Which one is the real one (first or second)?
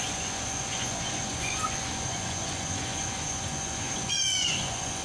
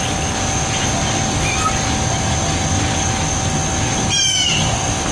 second